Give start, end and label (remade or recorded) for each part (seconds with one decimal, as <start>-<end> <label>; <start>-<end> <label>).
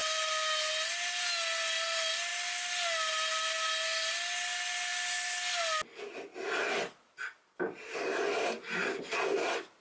0.0-9.8 recorded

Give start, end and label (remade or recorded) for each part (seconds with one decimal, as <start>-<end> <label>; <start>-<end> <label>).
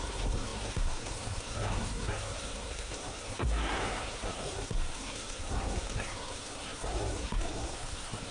0.0-8.3 remade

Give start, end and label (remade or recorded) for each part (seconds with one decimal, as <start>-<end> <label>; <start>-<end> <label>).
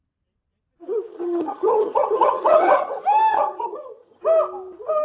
0.0-1.1 recorded; 1.1-2.9 remade; 2.9-3.3 recorded; 3.3-4.2 remade; 4.2-5.0 recorded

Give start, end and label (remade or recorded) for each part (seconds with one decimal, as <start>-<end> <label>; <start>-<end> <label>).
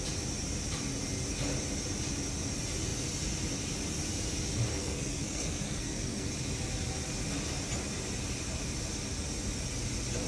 0.0-4.8 recorded; 4.8-6.3 remade; 6.3-10.3 recorded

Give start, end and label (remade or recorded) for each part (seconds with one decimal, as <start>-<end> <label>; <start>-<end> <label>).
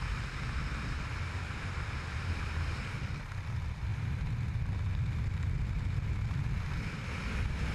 0.0-7.7 recorded